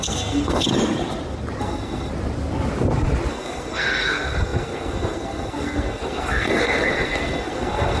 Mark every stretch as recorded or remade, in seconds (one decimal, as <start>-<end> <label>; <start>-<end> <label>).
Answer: 0.0-0.7 remade; 0.7-1.6 recorded; 1.6-2.1 remade; 2.1-3.3 recorded; 3.3-8.0 remade